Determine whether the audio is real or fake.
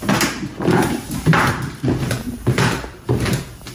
fake